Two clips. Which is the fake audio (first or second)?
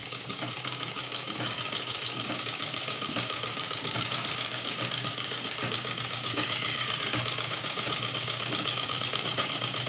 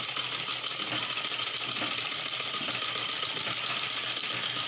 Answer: first